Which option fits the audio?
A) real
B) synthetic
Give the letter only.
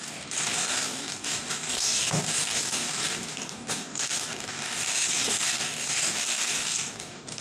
B